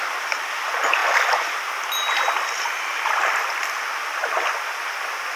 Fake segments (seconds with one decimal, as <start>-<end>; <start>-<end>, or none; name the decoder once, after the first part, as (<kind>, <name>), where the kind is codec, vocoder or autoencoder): none